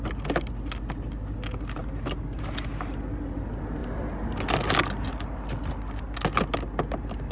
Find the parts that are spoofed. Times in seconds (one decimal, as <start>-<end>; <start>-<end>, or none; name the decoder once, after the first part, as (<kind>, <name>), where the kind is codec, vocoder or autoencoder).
none